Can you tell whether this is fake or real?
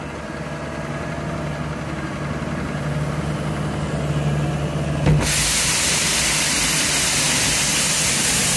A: real